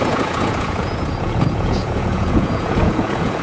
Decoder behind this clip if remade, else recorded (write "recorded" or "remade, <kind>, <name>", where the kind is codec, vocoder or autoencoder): remade, vocoder, Vocos